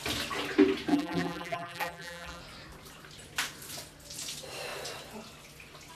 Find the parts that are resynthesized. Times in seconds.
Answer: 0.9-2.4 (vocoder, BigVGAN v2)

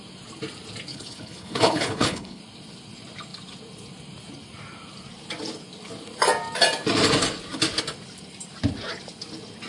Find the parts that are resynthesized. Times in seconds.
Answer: 0.9-2.4 (codec, HILCodec)